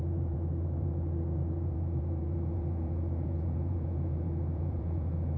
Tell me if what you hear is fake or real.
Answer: fake